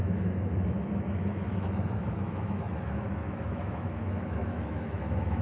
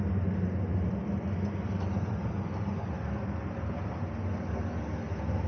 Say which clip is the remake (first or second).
first